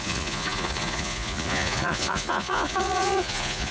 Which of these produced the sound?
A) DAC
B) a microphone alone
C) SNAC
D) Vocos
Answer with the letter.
D